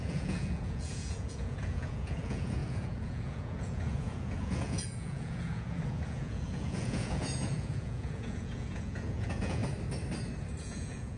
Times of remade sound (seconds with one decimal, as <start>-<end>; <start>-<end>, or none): 0.0-9.6; 10.6-11.2